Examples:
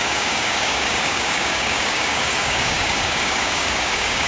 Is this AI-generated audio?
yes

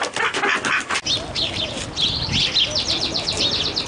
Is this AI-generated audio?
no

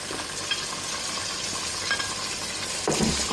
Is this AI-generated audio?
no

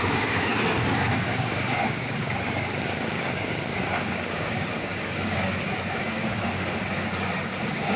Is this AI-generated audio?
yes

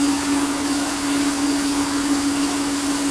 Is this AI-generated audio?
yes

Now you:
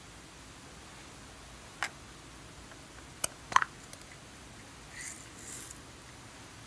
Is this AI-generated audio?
no